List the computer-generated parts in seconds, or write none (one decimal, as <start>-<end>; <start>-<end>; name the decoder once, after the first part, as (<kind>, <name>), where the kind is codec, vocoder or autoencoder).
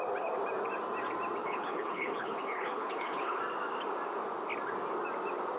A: 1.4-3.4 (codec, HILCodec)